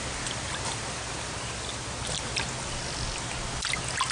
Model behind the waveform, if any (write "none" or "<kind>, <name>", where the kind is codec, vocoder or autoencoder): none